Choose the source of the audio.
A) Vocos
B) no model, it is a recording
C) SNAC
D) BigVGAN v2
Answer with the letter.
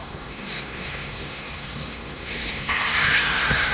C